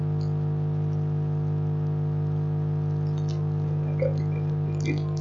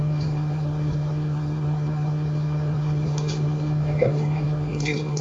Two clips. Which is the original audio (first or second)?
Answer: first